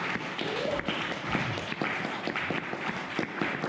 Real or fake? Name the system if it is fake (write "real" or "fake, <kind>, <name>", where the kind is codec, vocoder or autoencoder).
fake, vocoder, BigVGAN v2